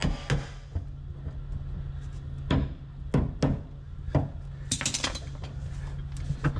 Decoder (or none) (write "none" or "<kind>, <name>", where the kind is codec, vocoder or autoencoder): none